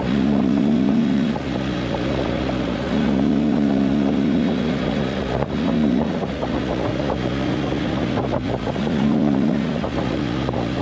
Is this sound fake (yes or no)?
yes